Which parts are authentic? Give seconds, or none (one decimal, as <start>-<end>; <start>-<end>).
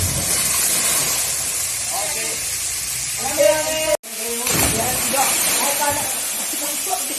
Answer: 0.0-7.2